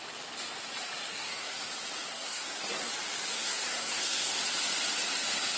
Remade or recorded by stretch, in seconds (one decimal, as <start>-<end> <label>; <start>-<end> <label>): 0.0-1.1 recorded; 1.1-1.7 remade; 1.7-2.1 recorded; 2.1-2.9 remade; 2.9-3.3 recorded; 3.3-4.4 remade; 4.4-5.6 recorded